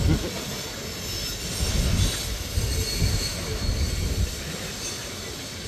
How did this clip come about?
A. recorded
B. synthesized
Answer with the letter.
A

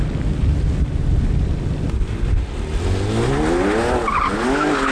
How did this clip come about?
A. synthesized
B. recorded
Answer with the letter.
B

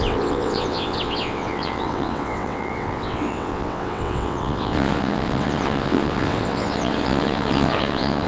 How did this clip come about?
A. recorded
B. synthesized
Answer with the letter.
B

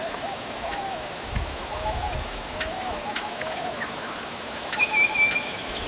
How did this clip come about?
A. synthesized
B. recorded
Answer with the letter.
A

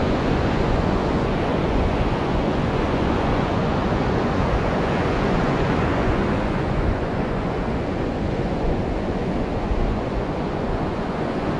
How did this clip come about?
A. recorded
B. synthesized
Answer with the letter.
B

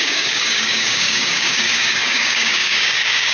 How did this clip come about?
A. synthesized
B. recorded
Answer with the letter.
A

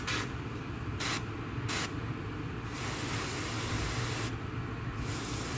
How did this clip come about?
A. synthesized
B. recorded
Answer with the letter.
B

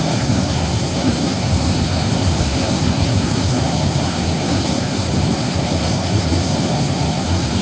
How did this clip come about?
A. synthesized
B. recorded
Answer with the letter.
A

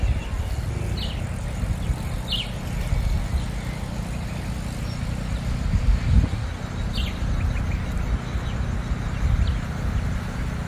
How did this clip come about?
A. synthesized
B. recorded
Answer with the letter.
B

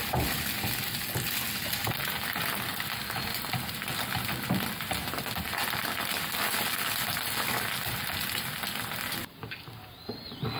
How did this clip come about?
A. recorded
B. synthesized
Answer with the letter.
A